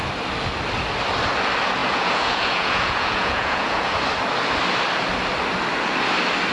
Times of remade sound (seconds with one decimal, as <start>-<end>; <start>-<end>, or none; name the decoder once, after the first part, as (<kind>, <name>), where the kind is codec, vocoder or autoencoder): 1.8-4.0 (vocoder, Vocos)

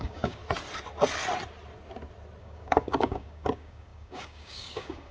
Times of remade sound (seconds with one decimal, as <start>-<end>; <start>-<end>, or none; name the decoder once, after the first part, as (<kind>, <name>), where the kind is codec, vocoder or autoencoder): 0.0-0.4 (codec, DAC); 2.4-5.1

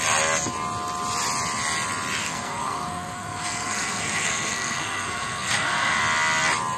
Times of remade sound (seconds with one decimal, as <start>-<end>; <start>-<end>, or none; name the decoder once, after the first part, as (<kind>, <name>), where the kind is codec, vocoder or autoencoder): 2.2-6.0 (codec, SNAC)

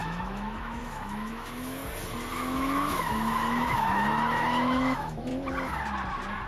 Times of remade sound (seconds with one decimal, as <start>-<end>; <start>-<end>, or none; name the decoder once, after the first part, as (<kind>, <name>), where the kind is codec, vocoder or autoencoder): 0.0-1.8 (autoencoder, DAC-VAE); 2.3-5.3

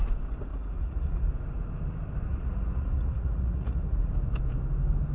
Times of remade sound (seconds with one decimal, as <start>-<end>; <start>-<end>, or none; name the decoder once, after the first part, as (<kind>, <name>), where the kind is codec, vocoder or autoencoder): 0.5-1.3 (vocoder, Vocos); 2.3-4.1